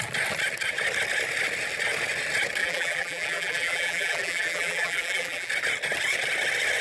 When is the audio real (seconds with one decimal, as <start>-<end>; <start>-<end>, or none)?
0.0-2.6; 5.5-6.8